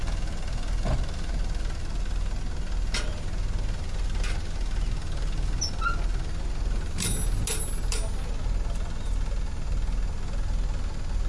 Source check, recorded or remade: recorded